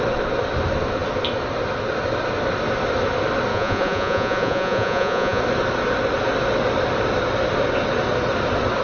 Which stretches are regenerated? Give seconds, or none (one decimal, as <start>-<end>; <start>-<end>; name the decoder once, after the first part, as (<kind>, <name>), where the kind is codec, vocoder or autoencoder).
3.5-5.4 (vocoder, Vocos)